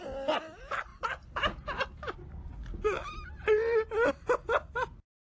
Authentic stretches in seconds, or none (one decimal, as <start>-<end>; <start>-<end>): 0.0-5.3